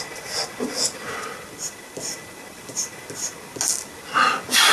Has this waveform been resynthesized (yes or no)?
no